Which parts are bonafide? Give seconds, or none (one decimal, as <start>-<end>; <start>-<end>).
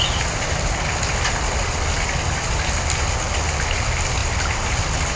0.0-5.2